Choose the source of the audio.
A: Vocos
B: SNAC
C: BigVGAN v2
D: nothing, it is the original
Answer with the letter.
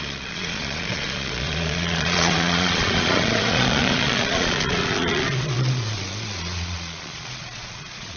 A